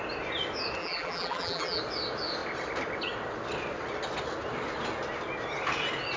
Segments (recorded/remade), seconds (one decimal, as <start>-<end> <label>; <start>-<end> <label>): 0.0-0.8 recorded; 0.8-1.8 remade; 1.8-6.2 recorded